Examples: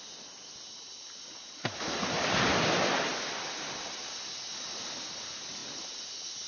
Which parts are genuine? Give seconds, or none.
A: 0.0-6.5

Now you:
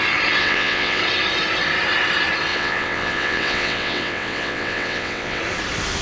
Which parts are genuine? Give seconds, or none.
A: 0.0-0.4; 1.0-2.5; 5.4-6.0